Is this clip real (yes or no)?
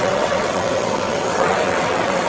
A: no